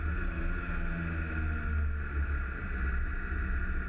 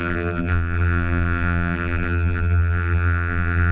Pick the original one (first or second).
first